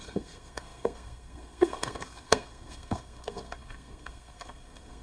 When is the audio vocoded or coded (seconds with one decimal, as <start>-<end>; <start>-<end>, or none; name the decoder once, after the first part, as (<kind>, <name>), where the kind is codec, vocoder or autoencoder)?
0.0-5.0 (codec, SNAC)

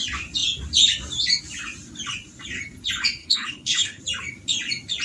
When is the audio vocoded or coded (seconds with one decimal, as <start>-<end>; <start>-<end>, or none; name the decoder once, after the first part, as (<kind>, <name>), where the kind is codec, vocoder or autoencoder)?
3.2-4.0 (codec, HILCodec)

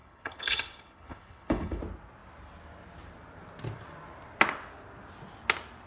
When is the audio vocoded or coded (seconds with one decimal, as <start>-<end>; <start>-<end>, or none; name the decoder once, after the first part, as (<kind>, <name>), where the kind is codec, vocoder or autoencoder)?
0.0-1.8 (codec, HILCodec)

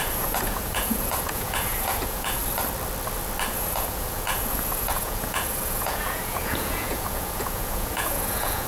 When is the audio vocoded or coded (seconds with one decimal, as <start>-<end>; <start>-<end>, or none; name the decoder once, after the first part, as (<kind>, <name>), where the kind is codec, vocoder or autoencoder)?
0.0-2.4 (vocoder, Vocos); 3.5-8.7

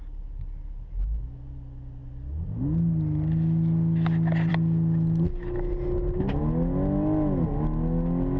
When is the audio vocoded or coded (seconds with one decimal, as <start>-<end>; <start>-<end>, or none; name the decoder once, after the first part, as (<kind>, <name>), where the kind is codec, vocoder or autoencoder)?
none